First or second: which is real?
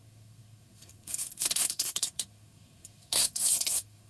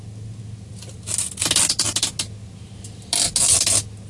second